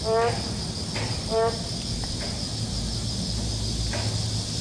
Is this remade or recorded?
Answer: recorded